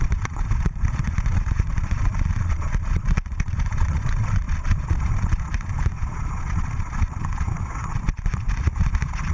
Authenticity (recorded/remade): remade